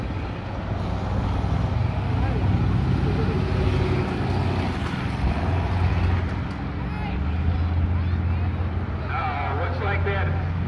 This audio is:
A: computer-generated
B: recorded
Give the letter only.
B